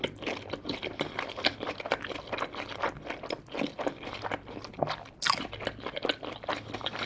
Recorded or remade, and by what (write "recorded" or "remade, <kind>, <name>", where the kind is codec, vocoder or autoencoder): recorded